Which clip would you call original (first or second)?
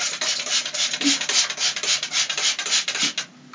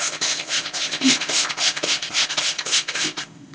first